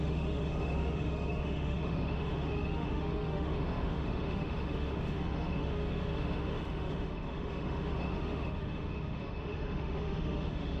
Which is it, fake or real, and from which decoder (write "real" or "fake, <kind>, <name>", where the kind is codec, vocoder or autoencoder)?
fake, autoencoder, DAC-VAE